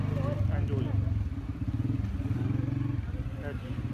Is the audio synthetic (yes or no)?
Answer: no